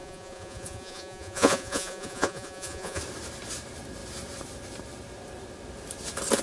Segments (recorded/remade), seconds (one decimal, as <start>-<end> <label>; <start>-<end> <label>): 0.0-3.0 remade; 3.0-6.4 recorded